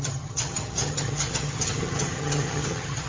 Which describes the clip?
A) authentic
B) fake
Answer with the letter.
B